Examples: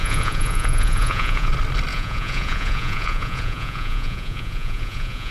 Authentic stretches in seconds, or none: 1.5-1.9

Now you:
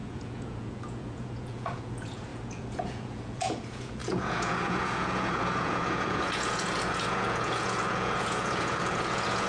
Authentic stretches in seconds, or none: none